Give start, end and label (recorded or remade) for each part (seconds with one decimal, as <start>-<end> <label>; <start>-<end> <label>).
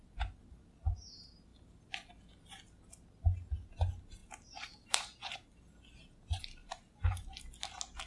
0.0-4.2 recorded; 4.2-5.6 remade; 5.6-6.6 recorded; 6.6-7.4 remade; 7.4-8.1 recorded